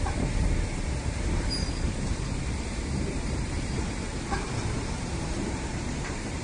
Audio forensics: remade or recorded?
remade